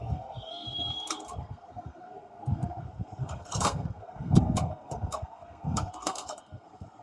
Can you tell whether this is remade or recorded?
remade